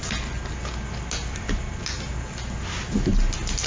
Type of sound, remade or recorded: recorded